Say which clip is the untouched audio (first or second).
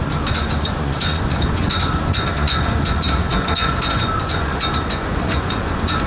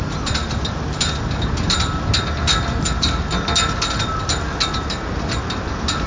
second